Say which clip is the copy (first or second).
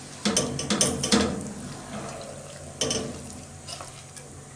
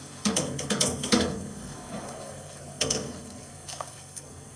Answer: second